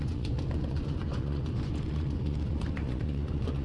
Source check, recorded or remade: remade